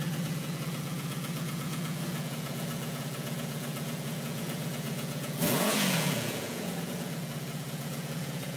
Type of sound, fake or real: fake